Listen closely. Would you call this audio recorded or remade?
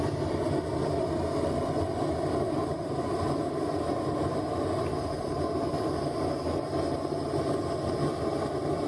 recorded